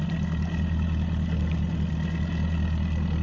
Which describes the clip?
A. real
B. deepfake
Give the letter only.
A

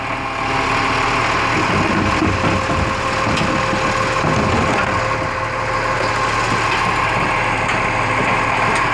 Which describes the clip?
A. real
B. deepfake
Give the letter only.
A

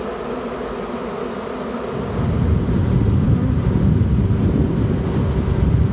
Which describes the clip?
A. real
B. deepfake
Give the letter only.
A